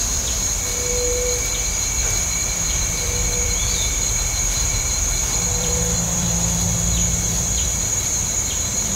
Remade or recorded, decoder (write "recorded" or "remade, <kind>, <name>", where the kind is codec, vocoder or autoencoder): remade, vocoder, BigVGAN v2